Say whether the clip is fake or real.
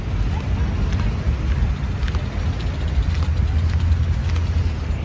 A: real